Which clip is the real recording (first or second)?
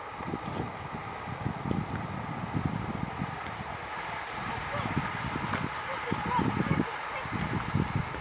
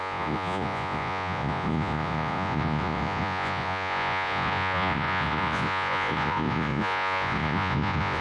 first